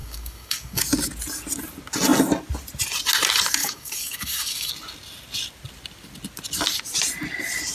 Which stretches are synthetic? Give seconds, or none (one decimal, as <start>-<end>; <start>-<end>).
0.0-0.8; 3.6-4.7